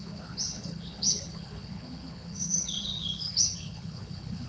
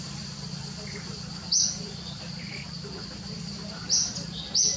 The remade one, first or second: first